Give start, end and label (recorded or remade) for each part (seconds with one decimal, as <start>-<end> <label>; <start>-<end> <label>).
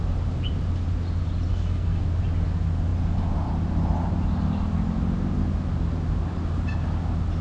0.0-1.5 recorded; 1.5-2.0 remade; 2.0-7.4 recorded